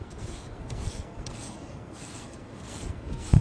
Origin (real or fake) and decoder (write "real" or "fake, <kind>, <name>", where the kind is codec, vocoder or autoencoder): fake, codec, SNAC